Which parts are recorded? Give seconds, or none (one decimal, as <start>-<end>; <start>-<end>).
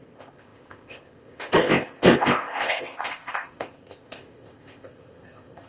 none